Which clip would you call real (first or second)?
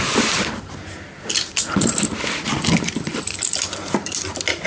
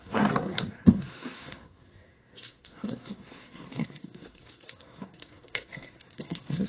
first